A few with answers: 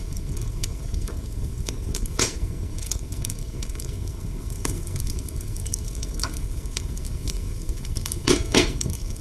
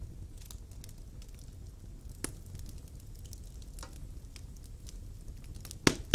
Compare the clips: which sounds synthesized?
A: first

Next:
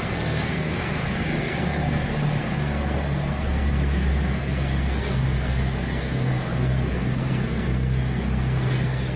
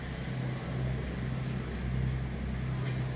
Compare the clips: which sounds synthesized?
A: first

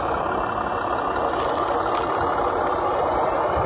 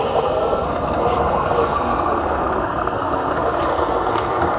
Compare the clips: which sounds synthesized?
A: second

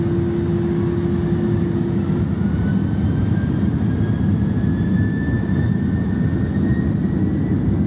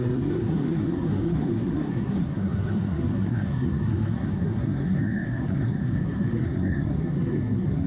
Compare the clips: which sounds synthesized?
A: second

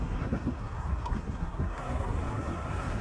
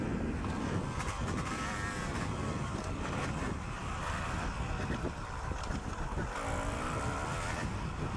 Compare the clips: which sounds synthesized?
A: first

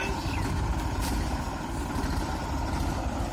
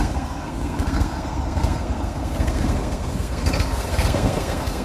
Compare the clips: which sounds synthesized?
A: second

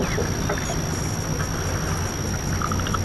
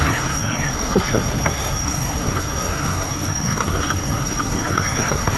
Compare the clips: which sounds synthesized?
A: second